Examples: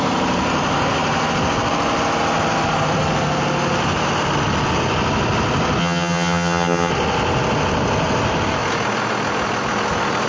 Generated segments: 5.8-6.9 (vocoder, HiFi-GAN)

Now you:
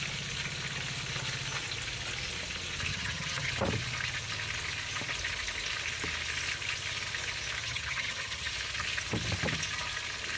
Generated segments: 2.9-3.5 (vocoder, HiFi-GAN); 7.6-8.5

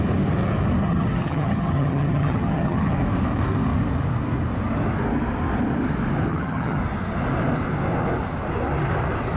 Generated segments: 0.8-2.9 (vocoder, HiFi-GAN); 6.3-6.8

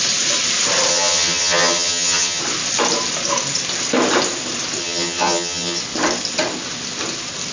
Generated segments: 0.9-2.4 (vocoder, HiFi-GAN); 4.8-5.8

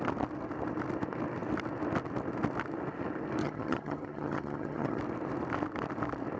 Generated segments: 3.4-5.0 (vocoder, HiFi-GAN)